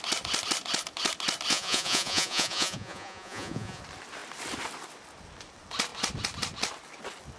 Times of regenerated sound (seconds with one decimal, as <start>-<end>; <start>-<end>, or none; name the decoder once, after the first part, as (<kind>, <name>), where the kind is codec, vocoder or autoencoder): 1.5-3.8 (vocoder, Vocos)